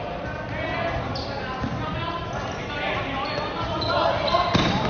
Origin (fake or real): real